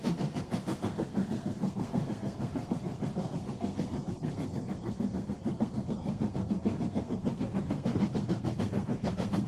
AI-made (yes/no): yes